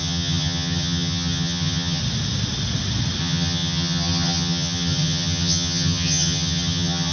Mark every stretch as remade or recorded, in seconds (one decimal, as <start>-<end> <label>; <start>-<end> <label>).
0.0-2.0 remade; 2.0-3.2 recorded; 3.2-7.1 remade